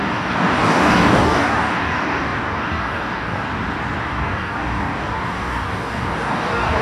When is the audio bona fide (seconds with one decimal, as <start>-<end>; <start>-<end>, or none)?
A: 3.5-4.0